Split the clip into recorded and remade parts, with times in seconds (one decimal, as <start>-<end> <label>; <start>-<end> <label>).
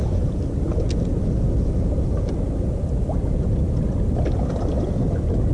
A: 0.0-5.5 recorded